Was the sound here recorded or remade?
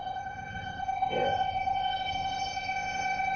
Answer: remade